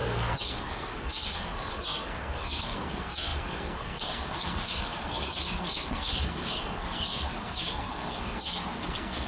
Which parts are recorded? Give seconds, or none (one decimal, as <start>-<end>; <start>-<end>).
none